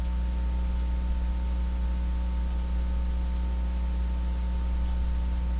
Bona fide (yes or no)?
yes